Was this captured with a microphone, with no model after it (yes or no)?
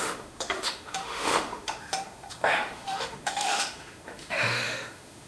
no